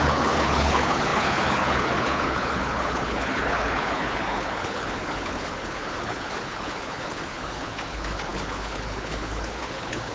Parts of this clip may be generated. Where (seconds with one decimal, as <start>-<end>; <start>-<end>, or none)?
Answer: 0.0-10.1